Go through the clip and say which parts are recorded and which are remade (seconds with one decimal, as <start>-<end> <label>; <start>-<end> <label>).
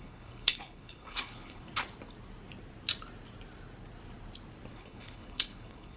0.0-1.7 remade; 1.7-4.7 recorded; 4.7-6.0 remade